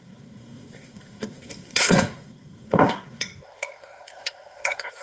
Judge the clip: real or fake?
fake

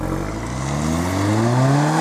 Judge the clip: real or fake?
real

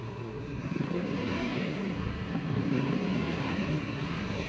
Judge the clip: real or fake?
fake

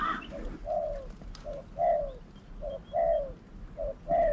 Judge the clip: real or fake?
real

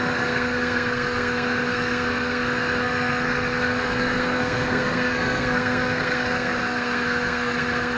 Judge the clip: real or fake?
fake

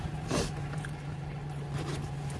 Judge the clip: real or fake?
real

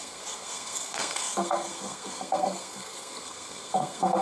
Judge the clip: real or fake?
fake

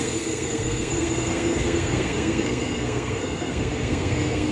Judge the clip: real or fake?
fake